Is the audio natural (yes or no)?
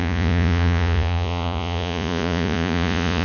no